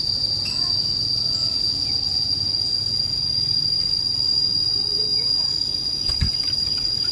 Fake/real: real